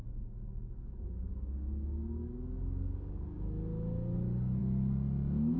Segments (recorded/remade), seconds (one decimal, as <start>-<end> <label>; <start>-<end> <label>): 0.0-3.4 remade; 3.4-5.6 recorded